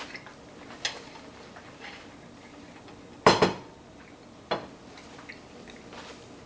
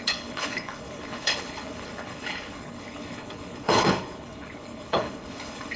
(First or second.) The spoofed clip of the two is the second